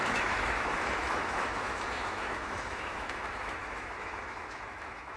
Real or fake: fake